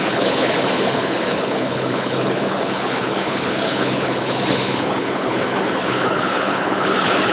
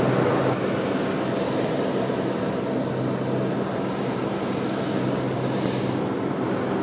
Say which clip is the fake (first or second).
first